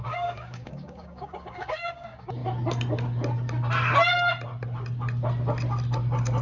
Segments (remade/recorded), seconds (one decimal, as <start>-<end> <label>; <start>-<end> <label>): 0.0-2.4 remade; 2.4-6.4 recorded

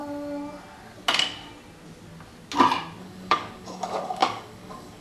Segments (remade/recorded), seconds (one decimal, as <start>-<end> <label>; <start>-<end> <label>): 0.0-3.0 recorded; 3.0-5.0 remade